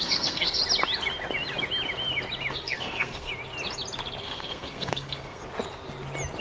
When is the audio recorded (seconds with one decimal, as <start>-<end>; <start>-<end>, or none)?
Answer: 0.6-2.5; 3.3-4.2; 5.4-6.4